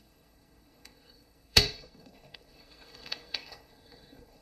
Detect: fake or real fake